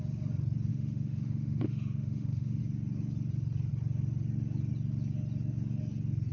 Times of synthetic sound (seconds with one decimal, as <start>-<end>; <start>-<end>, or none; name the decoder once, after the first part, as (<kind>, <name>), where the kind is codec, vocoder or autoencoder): 0.7-2.6 (autoencoder, DAC-VAE)